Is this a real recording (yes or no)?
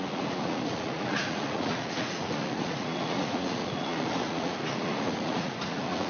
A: no